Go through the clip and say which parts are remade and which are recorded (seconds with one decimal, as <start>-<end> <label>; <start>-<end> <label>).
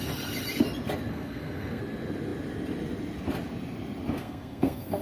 0.0-1.1 recorded; 1.1-1.8 remade; 1.8-4.2 recorded; 4.2-5.0 remade